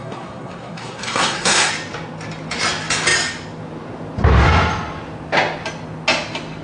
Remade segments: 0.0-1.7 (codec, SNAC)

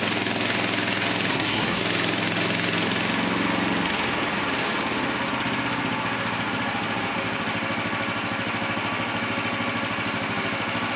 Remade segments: 1.3-1.8 (codec, SNAC)

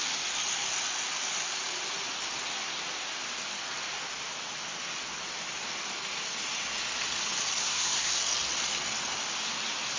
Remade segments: 7.6-8.2 (codec, SNAC)

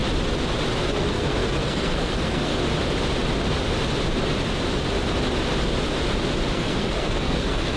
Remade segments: 0.9-2.5 (codec, SNAC); 6.5-7.8

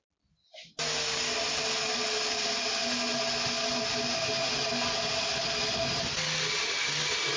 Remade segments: none

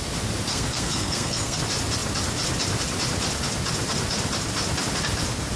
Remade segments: 0.5-1.6 (codec, SNAC)